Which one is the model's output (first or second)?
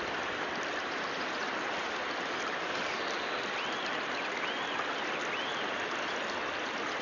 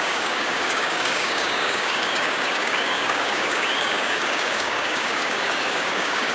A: second